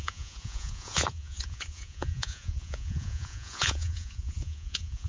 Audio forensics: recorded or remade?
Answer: remade